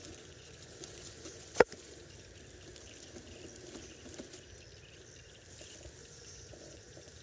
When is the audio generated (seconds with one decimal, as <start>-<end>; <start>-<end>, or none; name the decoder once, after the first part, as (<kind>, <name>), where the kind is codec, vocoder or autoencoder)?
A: 0.0-2.1 (vocoder, Vocos); 6.0-7.2